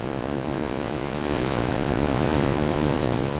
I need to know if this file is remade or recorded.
remade